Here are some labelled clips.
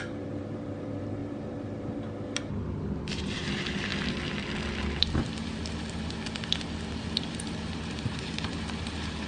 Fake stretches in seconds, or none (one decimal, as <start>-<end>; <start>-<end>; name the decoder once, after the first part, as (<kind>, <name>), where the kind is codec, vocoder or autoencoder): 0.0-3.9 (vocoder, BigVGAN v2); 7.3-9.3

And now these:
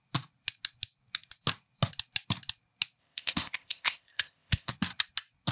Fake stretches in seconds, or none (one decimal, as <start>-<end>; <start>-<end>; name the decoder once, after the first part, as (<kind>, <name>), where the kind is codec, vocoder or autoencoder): 3.0-4.7 (codec, ZipCodec)

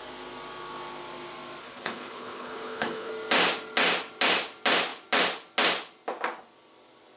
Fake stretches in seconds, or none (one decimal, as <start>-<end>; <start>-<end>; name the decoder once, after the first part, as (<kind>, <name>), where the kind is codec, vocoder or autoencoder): 1.6-3.1 (codec, HILCodec)

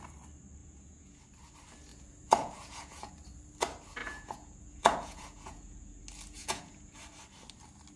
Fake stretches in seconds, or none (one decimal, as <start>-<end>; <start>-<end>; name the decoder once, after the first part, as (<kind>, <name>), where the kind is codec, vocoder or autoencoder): 0.6-1.2 (vocoder, Vocos); 1.9-3.1; 4.0-6.0; 6.4-7.0

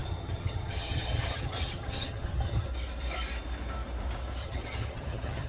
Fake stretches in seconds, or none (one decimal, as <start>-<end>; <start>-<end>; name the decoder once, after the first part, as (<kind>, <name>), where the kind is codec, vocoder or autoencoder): 0.0-2.7 (vocoder, HiFi-GAN); 4.4-5.5

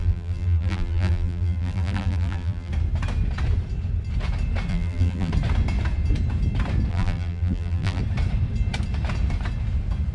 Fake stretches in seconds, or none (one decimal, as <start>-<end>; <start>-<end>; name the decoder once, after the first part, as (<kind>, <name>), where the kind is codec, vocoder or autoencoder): 0.0-2.7 (vocoder, BigVGAN v2); 4.7-5.3; 6.9-8.0